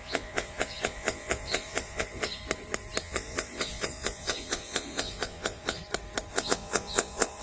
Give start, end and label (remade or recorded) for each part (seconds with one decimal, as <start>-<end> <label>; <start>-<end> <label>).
0.0-2.4 remade; 2.4-3.0 recorded; 3.0-5.8 remade; 5.8-6.3 recorded; 6.3-7.4 remade